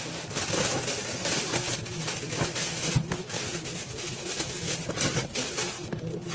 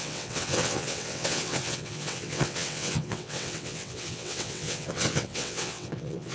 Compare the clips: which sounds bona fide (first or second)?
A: first